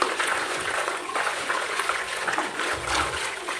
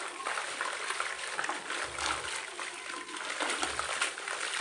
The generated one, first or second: first